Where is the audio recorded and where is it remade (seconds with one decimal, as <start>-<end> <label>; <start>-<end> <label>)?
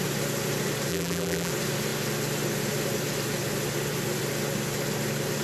0.0-0.9 recorded; 0.9-1.5 remade; 1.5-5.4 recorded